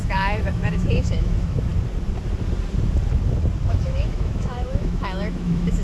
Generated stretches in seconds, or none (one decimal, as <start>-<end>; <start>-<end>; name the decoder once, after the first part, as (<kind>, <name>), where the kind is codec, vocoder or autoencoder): 0.0-1.7 (autoencoder, DAC-VAE); 3.7-5.8